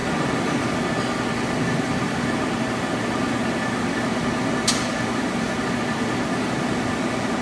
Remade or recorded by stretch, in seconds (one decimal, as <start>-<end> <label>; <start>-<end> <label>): 0.0-7.4 recorded